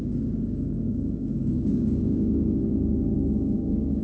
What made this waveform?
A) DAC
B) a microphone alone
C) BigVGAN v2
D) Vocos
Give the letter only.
A